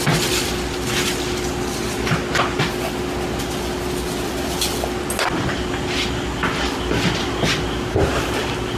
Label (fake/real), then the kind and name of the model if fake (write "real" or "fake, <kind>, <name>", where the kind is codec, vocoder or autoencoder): real